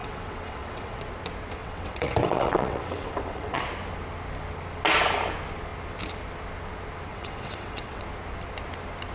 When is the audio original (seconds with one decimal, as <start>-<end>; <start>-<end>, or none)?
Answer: 1.0-1.6; 3.7-7.1; 8.0-9.1